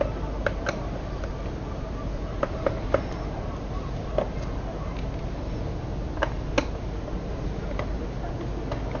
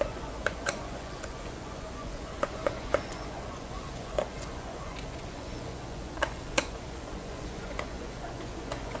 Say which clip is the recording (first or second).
first